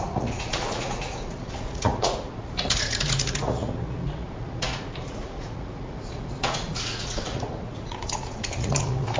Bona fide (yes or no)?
no